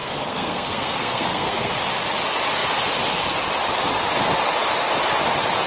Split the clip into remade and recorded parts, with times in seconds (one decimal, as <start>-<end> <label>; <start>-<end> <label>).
0.0-1.7 remade; 1.7-5.7 recorded